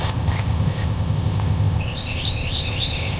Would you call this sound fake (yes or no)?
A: yes